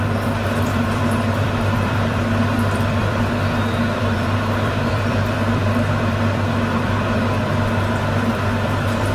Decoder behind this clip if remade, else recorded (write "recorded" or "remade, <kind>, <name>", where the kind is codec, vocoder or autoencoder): remade, vocoder, BigVGAN v2